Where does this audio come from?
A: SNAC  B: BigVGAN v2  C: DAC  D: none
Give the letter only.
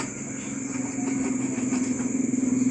D